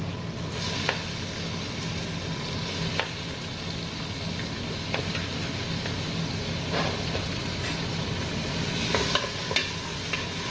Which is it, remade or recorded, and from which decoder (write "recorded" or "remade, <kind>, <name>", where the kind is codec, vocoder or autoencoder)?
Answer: recorded